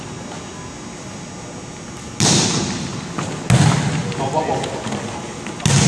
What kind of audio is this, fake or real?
real